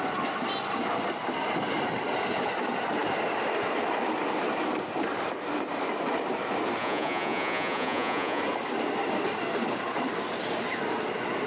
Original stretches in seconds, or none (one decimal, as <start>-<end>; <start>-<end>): 0.0-6.8; 8.4-11.5